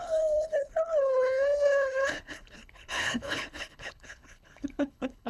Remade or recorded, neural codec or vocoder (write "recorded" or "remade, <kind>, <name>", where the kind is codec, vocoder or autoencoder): remade, codec, HILCodec